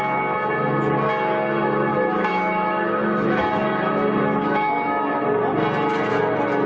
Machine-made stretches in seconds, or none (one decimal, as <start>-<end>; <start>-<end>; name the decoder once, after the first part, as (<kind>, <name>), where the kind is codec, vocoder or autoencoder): 1.9-3.4 (autoencoder, DAC-VAE); 4.4-5.2